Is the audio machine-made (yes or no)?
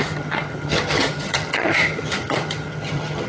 yes